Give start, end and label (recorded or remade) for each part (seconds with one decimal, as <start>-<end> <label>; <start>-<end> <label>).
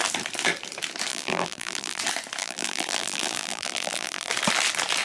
0.0-1.1 recorded; 1.1-2.0 remade; 2.0-2.4 recorded; 2.4-4.3 remade; 4.3-5.0 recorded